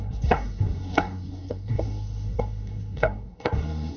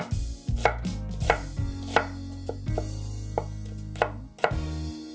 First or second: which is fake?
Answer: first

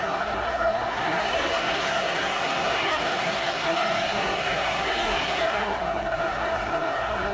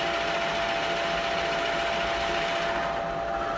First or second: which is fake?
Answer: first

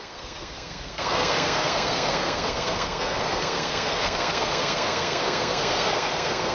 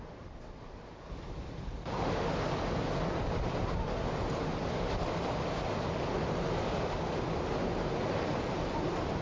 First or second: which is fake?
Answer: first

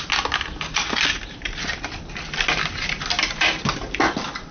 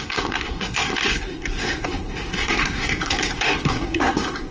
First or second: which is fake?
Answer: second